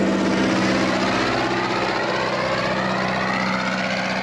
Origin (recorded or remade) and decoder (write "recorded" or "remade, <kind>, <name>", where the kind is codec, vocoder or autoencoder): recorded